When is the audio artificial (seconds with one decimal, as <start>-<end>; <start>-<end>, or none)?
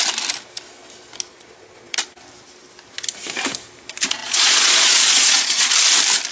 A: 1.3-2.0; 4.2-5.7